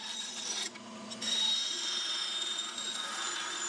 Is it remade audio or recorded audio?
recorded